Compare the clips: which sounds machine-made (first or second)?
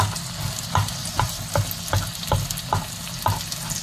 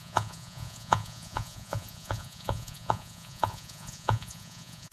second